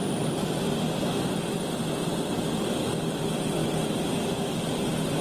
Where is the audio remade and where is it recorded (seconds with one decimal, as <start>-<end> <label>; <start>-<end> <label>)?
0.0-2.0 recorded; 2.0-2.5 remade; 2.5-3.6 recorded; 3.6-4.1 remade; 4.1-5.2 recorded